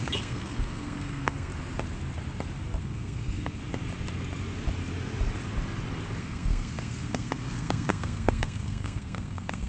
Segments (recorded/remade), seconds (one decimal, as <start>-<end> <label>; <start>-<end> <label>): 0.0-1.5 remade; 1.5-2.8 recorded; 2.8-3.6 remade; 3.6-6.2 recorded; 6.2-9.7 remade